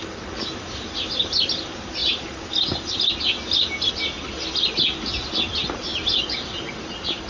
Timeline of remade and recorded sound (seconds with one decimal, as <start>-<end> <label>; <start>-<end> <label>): 0.0-7.3 recorded